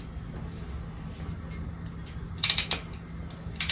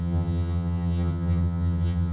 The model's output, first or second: second